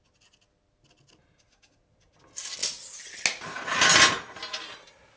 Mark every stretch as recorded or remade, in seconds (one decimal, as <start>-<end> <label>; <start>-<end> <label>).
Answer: 0.0-5.2 recorded